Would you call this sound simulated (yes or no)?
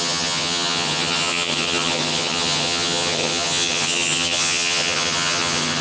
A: yes